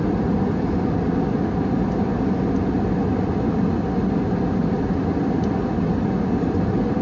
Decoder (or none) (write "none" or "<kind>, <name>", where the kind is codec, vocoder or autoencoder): none